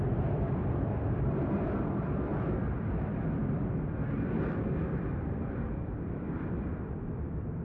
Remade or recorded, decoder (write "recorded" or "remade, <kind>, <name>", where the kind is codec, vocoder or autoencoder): remade, vocoder, BigVGAN v2